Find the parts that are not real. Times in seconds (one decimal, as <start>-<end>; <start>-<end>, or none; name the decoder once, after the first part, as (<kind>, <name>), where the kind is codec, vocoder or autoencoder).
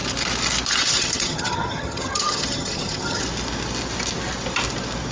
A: 0.7-3.2 (vocoder, HiFi-GAN)